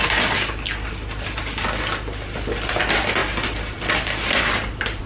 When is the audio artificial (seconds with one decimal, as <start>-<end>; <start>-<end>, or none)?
none